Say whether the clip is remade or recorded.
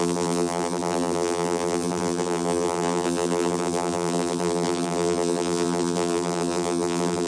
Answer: remade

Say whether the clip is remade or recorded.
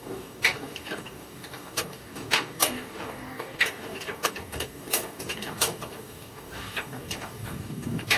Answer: remade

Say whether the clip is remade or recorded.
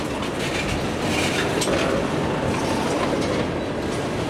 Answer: recorded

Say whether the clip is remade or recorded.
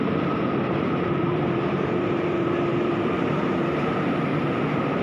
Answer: remade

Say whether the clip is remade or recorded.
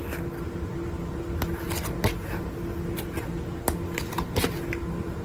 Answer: recorded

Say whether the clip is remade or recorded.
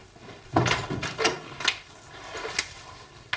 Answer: recorded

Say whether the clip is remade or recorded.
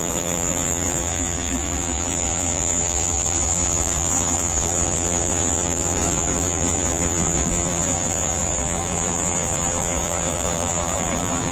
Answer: remade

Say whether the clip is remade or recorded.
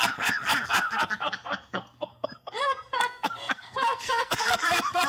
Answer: remade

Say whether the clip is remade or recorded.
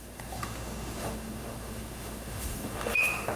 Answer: remade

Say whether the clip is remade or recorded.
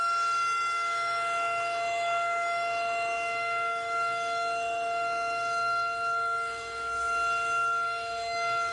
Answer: remade